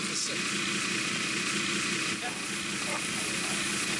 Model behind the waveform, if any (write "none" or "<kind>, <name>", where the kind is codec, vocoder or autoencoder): none